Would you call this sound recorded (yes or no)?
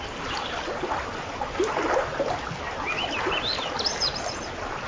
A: yes